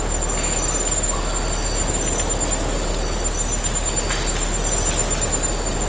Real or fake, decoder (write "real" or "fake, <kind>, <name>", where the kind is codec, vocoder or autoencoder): real